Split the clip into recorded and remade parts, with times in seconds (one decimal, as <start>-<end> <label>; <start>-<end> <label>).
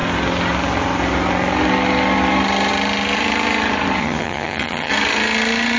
0.0-4.0 recorded; 4.0-4.9 remade; 4.9-5.8 recorded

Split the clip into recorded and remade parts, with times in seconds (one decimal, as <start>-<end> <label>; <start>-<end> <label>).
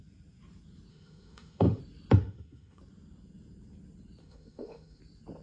0.0-0.9 recorded; 0.9-1.8 remade; 1.8-2.2 recorded; 2.2-2.8 remade; 2.8-4.2 recorded; 4.2-5.0 remade; 5.0-5.4 recorded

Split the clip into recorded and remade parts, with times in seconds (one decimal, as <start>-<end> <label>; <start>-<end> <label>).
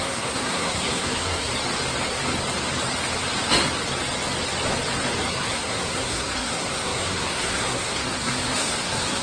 0.0-1.5 remade; 1.5-5.3 recorded; 5.3-9.2 remade